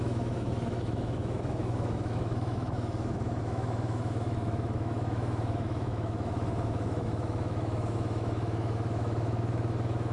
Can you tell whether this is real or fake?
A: fake